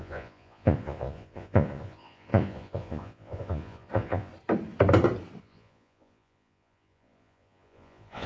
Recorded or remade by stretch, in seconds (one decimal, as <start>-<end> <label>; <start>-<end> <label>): 0.0-4.3 remade; 4.3-5.4 recorded; 5.4-8.3 remade